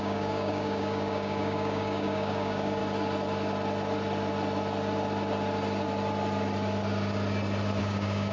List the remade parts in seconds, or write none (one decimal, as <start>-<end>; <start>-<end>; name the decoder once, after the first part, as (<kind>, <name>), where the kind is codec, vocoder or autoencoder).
0.0-2.8 (codec, DAC); 7.8-8.3